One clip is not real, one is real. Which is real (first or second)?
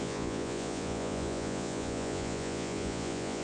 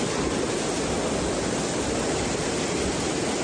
second